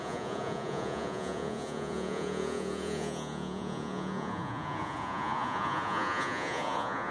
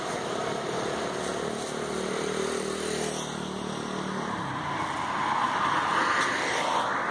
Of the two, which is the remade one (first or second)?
first